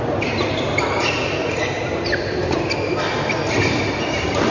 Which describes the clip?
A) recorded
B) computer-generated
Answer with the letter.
A